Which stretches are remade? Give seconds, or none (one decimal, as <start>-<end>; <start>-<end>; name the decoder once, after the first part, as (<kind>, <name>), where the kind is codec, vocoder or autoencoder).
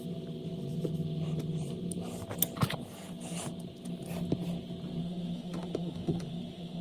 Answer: 5.0-6.8 (autoencoder, DAC-VAE)